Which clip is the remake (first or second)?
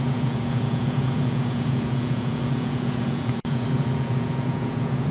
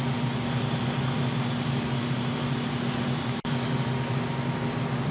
first